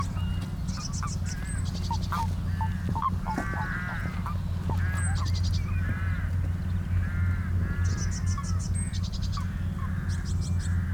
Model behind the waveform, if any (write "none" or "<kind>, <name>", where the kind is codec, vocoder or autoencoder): none